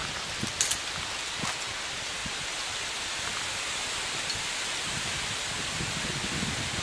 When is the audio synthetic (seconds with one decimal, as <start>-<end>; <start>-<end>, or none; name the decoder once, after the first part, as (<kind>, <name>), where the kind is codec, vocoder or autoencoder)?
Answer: none